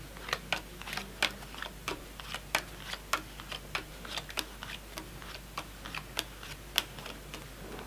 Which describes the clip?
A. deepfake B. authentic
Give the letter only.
B